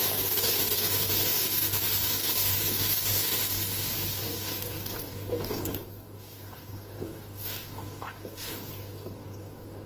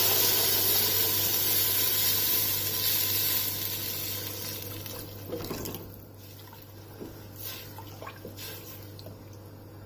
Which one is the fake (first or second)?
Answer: first